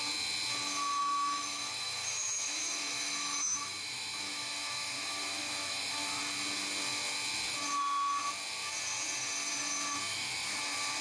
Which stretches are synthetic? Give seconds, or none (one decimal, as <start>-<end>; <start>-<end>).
1.0-6.2; 10.1-10.6